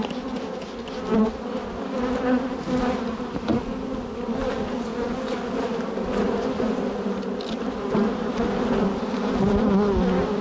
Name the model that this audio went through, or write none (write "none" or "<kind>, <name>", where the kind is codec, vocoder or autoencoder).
none